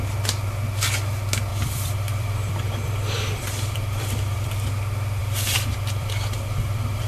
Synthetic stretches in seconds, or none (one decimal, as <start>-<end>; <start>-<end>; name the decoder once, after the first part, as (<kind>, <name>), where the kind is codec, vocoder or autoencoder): 1.5-4.5 (vocoder, BigVGAN v2); 5.2-7.1